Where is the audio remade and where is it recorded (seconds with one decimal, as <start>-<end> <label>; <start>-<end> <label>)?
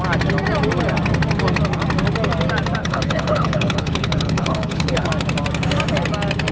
0.0-2.8 recorded; 2.8-5.1 remade; 5.1-6.5 recorded